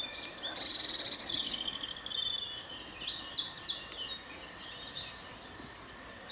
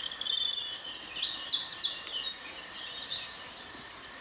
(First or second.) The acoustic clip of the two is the first